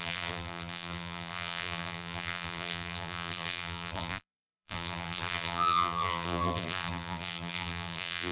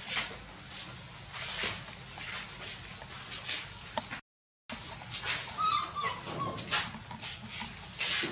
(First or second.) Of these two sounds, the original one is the second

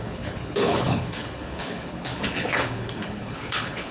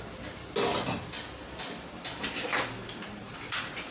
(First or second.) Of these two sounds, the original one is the second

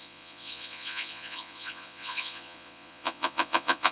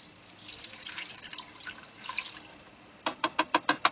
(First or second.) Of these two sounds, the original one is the second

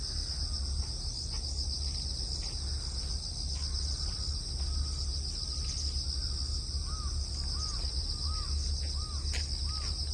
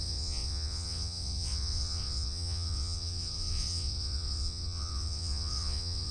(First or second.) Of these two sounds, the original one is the first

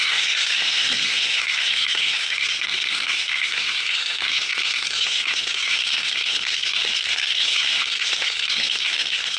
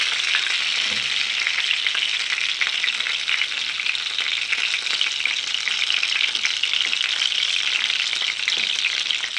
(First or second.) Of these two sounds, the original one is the second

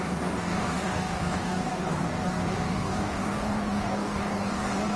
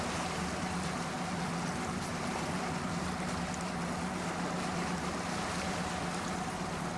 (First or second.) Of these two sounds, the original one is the second